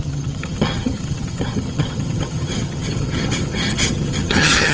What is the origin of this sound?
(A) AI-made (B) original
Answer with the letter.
A